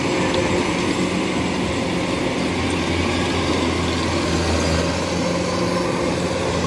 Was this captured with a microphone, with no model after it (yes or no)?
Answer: yes